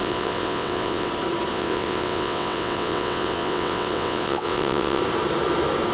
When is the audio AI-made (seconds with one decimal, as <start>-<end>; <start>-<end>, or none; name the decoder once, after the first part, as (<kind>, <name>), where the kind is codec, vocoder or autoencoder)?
0.0-1.1 (vocoder, WaveNeXt); 1.5-5.0